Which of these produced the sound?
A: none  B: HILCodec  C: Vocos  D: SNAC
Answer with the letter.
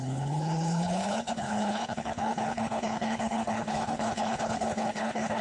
B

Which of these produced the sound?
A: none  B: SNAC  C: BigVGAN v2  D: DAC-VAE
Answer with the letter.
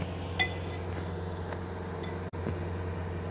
A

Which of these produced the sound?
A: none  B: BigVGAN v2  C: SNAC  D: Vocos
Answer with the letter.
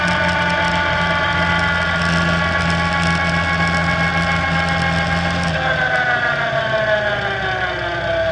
A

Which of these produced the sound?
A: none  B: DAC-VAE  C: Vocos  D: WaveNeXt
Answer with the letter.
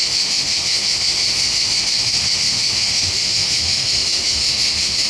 B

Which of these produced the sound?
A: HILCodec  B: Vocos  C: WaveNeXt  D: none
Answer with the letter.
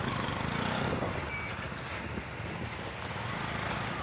D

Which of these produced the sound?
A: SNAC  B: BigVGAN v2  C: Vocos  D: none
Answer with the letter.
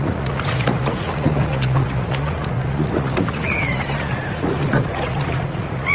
C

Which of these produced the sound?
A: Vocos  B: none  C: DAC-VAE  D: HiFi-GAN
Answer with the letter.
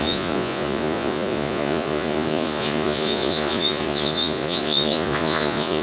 A